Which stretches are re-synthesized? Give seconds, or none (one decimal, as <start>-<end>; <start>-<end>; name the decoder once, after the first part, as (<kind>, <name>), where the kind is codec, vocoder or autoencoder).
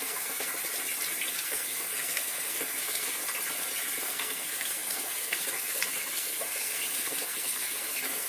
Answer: 0.0-0.5 (codec, SNAC); 1.3-3.2; 4.0-8.3